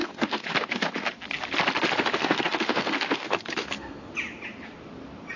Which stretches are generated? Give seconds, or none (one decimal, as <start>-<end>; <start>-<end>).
0.0-0.9; 2.2-4.1